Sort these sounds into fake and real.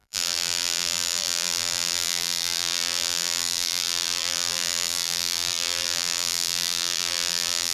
fake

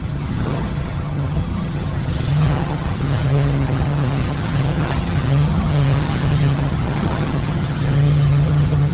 fake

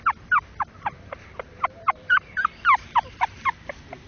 fake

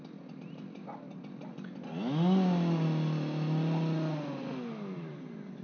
real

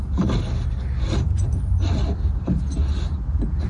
real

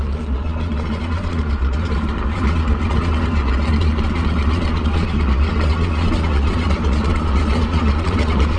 fake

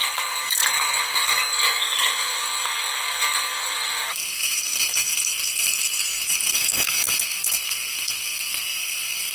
fake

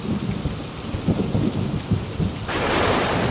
real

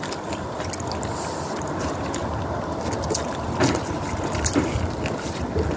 real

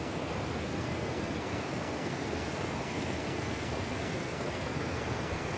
fake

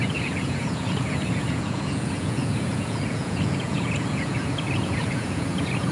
fake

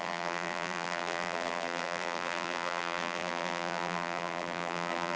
fake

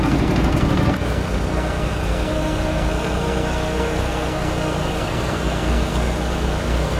fake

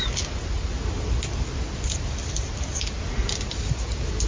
real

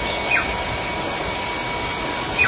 real